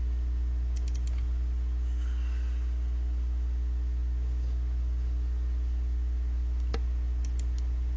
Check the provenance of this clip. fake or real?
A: fake